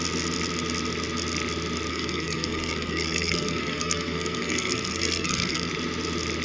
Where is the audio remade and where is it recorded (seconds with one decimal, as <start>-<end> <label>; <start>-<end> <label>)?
0.0-1.9 recorded; 1.9-5.7 remade; 5.7-6.4 recorded